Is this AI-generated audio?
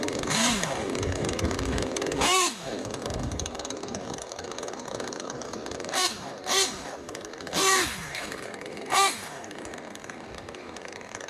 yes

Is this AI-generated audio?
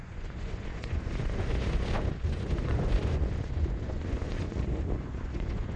yes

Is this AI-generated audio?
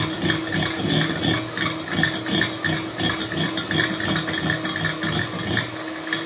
no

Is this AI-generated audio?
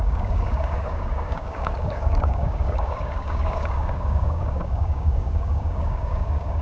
yes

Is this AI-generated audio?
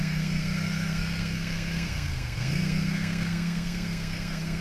yes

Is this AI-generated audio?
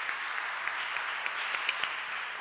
no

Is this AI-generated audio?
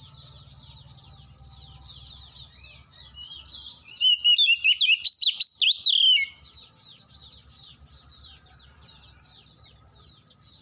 no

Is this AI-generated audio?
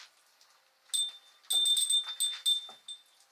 no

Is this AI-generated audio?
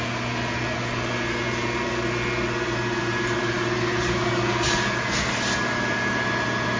no